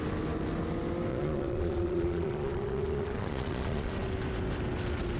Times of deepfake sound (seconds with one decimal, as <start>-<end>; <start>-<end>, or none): 1.1-3.9